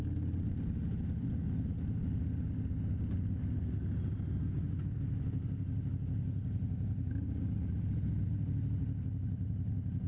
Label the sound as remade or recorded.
recorded